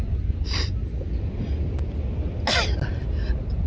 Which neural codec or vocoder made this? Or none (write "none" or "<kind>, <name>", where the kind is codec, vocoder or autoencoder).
none